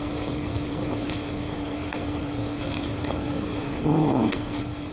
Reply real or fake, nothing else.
fake